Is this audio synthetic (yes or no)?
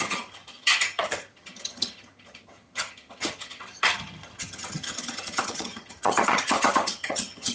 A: yes